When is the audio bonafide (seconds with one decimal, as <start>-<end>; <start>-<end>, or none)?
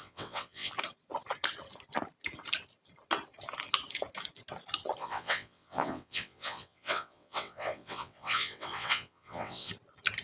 0.7-5.0; 9.7-10.2